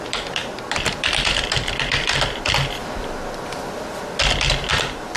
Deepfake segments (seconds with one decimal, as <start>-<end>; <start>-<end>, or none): 0.0-2.8; 4.7-5.2